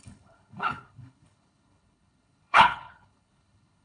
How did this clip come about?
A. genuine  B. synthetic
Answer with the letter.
B